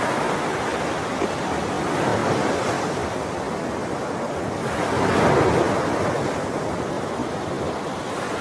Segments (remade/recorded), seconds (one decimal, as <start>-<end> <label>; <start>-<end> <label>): 0.0-8.4 recorded